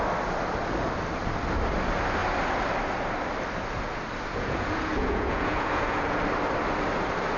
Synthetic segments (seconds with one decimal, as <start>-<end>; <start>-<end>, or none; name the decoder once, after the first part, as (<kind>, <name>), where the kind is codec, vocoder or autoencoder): 4.3-6.2 (vocoder, Vocos)